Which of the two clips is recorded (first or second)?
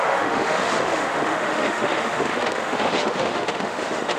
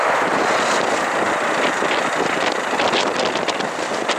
second